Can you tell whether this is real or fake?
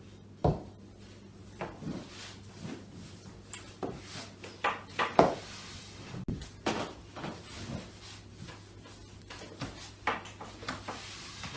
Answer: real